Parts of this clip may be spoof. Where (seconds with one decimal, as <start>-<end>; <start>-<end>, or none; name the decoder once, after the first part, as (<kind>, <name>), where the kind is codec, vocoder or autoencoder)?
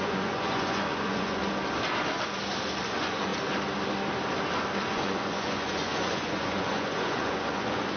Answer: 0.0-1.4 (vocoder, Vocos); 2.9-3.3; 4.9-8.0